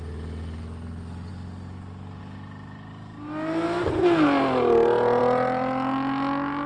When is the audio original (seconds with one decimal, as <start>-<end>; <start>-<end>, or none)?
0.0-6.7